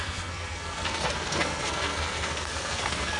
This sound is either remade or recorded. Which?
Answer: remade